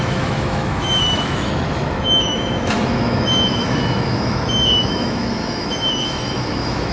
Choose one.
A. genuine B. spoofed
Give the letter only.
B